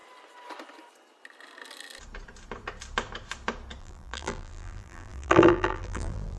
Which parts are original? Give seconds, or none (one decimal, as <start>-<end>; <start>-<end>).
0.0-3.8